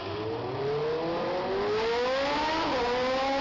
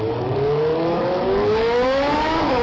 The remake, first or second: second